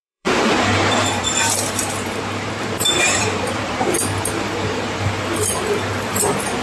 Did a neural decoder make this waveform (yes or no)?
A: yes